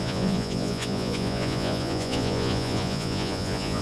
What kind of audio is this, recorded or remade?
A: remade